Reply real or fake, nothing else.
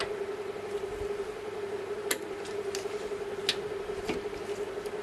real